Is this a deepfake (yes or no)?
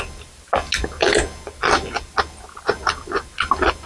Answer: no